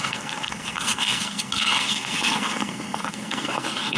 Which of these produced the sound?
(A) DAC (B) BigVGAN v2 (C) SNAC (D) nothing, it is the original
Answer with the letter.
C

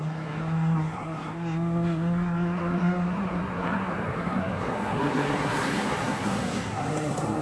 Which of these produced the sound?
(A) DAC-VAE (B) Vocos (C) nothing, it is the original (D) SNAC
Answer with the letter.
D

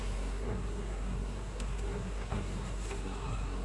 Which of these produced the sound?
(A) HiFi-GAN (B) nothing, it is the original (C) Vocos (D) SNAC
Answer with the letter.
D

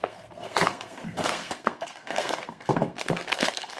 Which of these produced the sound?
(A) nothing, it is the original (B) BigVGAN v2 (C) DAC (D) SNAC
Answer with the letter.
D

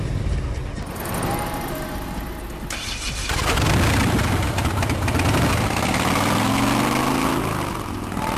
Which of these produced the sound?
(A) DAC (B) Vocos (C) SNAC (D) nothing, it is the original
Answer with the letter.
D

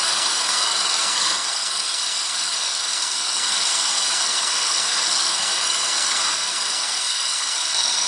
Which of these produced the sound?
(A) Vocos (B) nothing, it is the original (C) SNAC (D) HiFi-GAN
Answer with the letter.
C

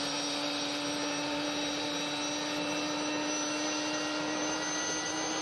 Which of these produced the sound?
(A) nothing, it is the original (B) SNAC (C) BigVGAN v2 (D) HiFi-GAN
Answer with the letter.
A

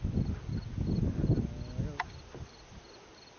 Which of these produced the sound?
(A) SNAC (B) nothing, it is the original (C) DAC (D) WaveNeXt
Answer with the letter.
B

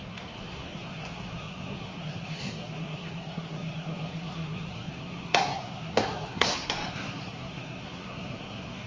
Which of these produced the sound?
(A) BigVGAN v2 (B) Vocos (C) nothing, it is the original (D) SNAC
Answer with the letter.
D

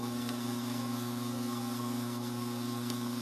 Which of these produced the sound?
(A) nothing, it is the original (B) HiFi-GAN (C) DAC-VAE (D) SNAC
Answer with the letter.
D